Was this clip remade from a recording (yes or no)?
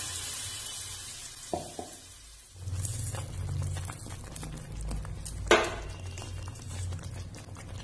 no